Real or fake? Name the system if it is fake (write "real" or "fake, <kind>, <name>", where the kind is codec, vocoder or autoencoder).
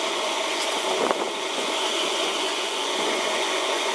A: fake, vocoder, Vocos